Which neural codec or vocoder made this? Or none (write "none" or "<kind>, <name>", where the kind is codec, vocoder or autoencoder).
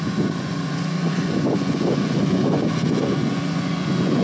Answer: vocoder, Vocos